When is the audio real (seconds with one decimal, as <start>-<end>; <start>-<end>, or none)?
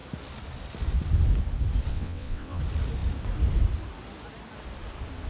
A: 0.0-1.9; 2.6-5.3